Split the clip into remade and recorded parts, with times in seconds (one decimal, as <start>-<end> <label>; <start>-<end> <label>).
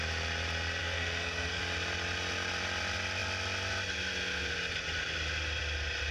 0.0-0.8 recorded; 0.8-1.6 remade; 1.6-6.1 recorded